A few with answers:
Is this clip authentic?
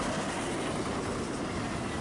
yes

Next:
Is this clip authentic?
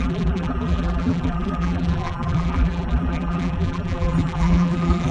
no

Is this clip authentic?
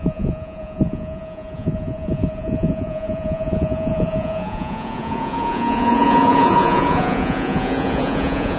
no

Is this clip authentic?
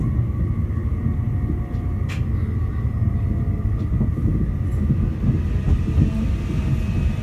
yes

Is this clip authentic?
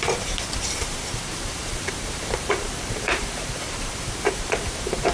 no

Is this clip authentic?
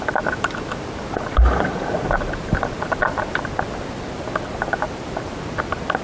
yes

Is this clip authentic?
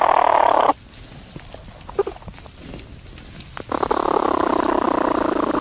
yes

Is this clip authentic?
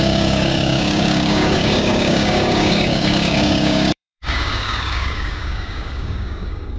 no